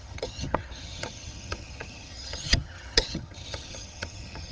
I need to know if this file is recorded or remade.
remade